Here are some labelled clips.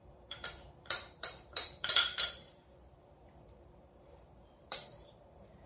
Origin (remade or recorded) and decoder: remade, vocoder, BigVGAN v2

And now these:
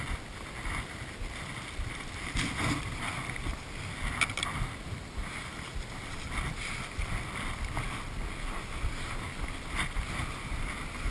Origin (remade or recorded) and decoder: recorded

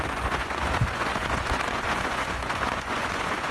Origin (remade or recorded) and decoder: remade, vocoder, Vocos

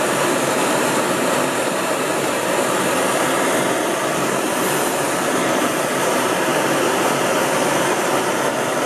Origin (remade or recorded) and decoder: remade, vocoder, BigVGAN v2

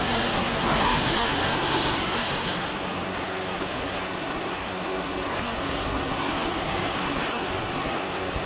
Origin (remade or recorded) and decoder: remade, codec, SNAC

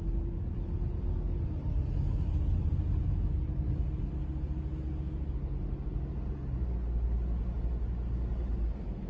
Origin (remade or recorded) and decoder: recorded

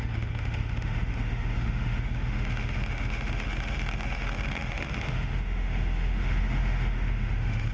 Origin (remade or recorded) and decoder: remade, autoencoder, DAC-VAE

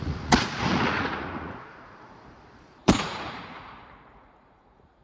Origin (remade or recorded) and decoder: remade, vocoder, Vocos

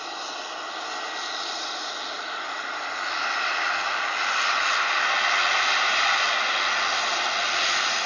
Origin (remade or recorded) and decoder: recorded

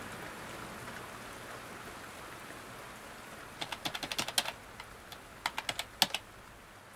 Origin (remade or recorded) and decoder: recorded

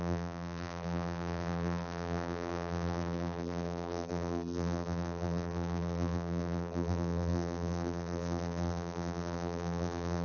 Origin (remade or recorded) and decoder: remade, vocoder, BigVGAN v2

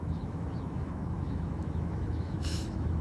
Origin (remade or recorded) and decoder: remade, autoencoder, DAC-VAE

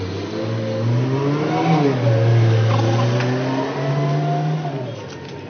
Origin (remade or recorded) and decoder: recorded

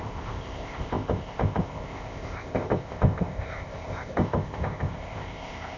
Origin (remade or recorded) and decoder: remade, codec, ZipCodec